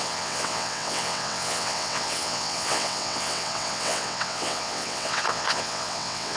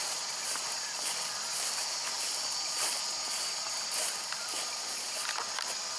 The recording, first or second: second